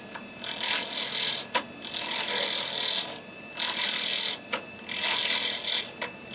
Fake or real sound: real